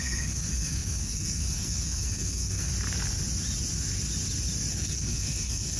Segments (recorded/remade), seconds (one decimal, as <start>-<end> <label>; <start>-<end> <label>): 0.0-2.7 remade; 2.7-4.7 recorded; 4.7-5.8 remade